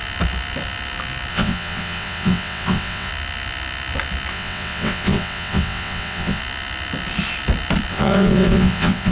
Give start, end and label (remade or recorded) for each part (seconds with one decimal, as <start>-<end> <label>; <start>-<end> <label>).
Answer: 0.0-1.3 recorded; 1.3-3.1 remade; 3.1-4.3 recorded; 4.3-6.4 remade; 6.4-7.9 recorded; 7.9-9.1 remade